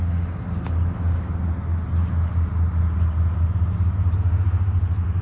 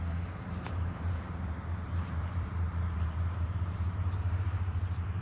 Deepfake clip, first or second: second